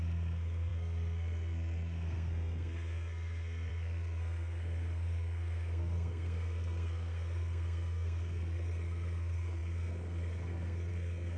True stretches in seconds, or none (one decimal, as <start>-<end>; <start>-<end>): none